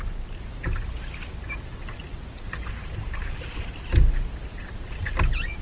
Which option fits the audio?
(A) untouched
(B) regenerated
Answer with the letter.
A